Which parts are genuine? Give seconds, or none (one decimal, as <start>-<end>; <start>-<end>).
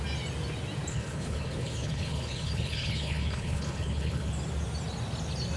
0.0-0.9; 4.3-5.6